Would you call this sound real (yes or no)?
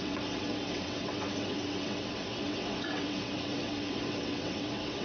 no